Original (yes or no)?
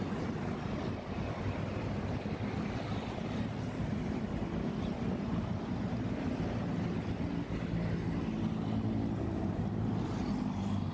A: yes